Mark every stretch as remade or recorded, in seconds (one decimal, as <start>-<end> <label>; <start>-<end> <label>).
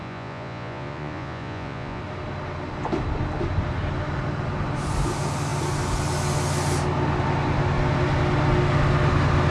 0.0-2.0 remade; 2.0-9.5 recorded